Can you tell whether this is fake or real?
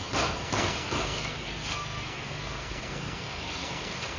fake